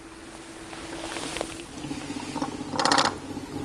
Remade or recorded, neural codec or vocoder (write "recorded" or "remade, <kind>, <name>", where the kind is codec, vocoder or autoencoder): recorded